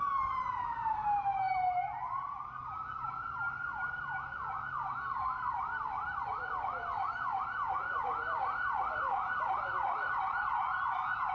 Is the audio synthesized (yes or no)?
no